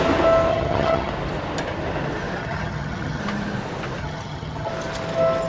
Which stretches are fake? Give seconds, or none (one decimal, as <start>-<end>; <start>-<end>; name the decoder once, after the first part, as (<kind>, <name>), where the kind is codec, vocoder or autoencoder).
0.5-1.1 (vocoder, HiFi-GAN); 2.4-3.2; 4.0-4.7